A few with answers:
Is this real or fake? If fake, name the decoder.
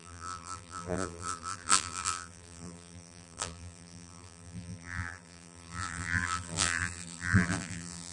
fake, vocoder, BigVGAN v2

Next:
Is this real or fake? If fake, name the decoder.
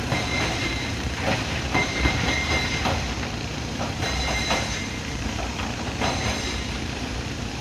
fake, vocoder, BigVGAN v2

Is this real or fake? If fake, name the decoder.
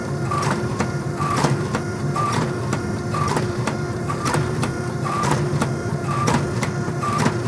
fake, vocoder, BigVGAN v2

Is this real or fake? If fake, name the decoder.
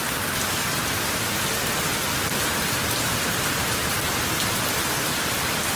fake, vocoder, BigVGAN v2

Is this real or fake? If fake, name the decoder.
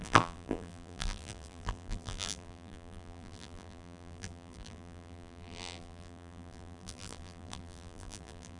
fake, vocoder, BigVGAN v2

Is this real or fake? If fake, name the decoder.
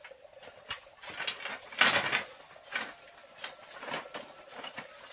real